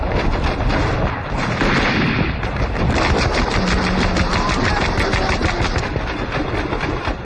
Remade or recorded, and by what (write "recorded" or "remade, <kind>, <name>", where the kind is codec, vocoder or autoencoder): recorded